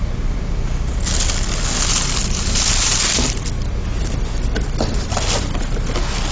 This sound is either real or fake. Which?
real